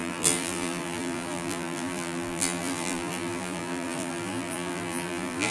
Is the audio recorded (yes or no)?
no